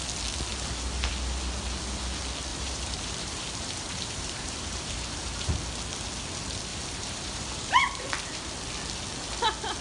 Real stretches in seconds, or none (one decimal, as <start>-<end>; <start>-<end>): 0.0-2.5; 5.5-6.7; 8.0-9.8